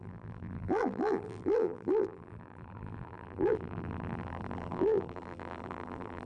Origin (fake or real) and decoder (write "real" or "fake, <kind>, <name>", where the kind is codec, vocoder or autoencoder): fake, vocoder, BigVGAN v2